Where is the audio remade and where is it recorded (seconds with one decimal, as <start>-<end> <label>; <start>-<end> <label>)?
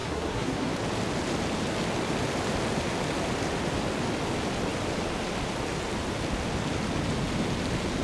0.0-0.7 remade; 0.7-8.0 recorded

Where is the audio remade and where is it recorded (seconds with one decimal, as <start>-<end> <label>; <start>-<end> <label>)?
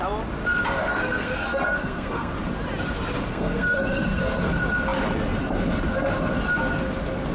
0.0-0.8 recorded; 0.8-2.3 remade; 2.3-3.3 recorded; 3.3-4.5 remade; 4.5-7.3 recorded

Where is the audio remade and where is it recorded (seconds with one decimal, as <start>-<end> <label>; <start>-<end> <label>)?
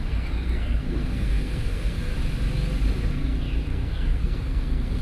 0.0-2.1 remade; 2.1-3.1 recorded; 3.1-5.0 remade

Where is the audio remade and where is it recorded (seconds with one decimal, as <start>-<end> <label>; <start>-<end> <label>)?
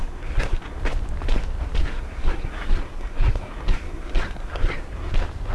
0.0-0.8 remade; 0.8-1.8 recorded; 1.8-5.1 remade; 5.1-5.5 recorded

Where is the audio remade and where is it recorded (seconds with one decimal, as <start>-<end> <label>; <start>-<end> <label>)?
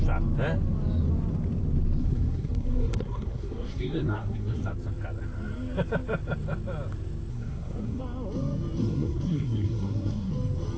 0.0-2.0 recorded; 2.0-4.7 remade; 4.7-7.3 recorded; 7.3-8.0 remade; 8.0-8.8 recorded; 8.8-10.3 remade; 10.3-10.8 recorded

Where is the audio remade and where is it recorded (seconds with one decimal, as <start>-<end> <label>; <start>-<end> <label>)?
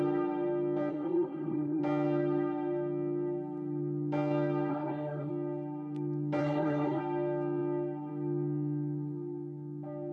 0.0-0.9 recorded; 0.9-1.8 remade; 1.8-4.7 recorded; 4.7-5.3 remade; 5.3-6.4 recorded; 6.4-7.0 remade; 7.0-10.1 recorded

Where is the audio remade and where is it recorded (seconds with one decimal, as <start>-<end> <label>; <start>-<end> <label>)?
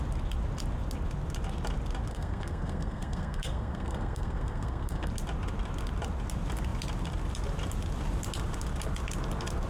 0.0-2.1 recorded; 2.1-5.1 remade; 5.1-9.7 recorded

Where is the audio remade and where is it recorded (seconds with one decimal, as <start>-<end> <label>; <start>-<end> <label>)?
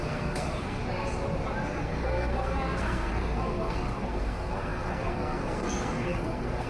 0.0-0.8 remade; 0.8-1.8 recorded; 1.8-6.7 remade